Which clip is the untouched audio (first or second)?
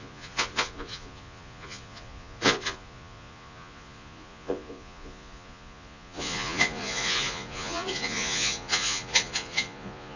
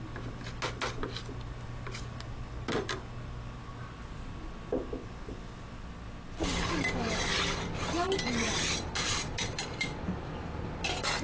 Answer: second